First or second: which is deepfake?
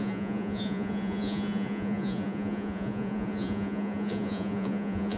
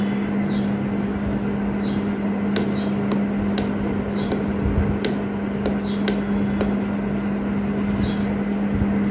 first